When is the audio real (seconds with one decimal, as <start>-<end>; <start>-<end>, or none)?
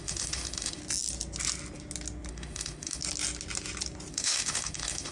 0.8-2.3; 3.0-4.1